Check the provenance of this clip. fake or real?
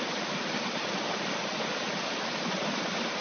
real